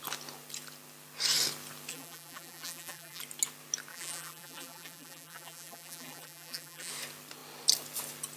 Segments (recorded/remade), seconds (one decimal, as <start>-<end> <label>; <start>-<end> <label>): 0.0-1.9 recorded; 1.9-3.2 remade; 3.2-3.9 recorded; 3.9-6.9 remade; 6.9-8.4 recorded